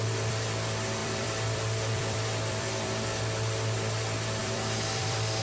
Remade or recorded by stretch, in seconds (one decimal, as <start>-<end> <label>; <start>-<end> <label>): 0.0-1.0 recorded; 1.0-3.2 remade; 3.2-4.4 recorded; 4.4-5.4 remade